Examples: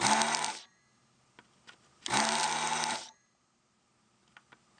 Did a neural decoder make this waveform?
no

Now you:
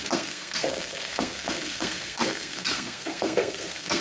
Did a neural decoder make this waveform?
yes